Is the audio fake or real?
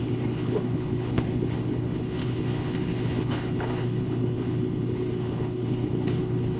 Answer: fake